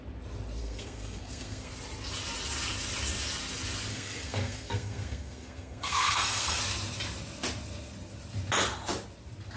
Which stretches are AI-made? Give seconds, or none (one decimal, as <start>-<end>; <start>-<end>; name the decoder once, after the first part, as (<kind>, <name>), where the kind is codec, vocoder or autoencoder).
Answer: 0.6-1.7 (codec, SNAC); 3.9-6.6